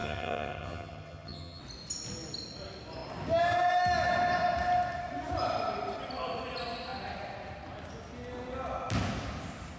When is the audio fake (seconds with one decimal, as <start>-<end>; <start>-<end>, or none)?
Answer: 0.0-1.6